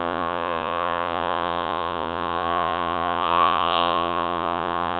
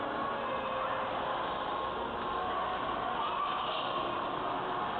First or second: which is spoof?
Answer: first